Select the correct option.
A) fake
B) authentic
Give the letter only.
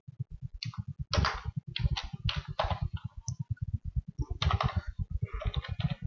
B